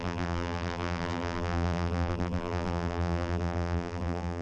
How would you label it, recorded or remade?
remade